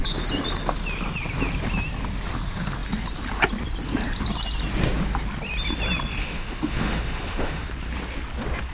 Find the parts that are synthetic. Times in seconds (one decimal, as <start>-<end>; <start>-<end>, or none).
6.2-7.7